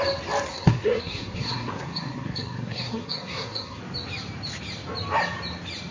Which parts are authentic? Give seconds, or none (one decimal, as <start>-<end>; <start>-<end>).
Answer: 0.0-0.5; 3.8-5.9